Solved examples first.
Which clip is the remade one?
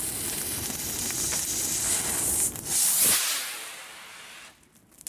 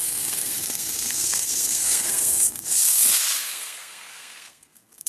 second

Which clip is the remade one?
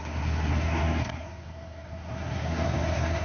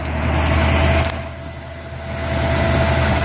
first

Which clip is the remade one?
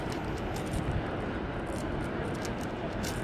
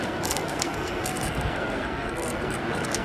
second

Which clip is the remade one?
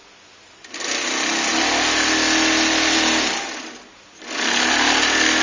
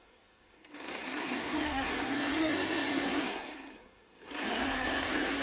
second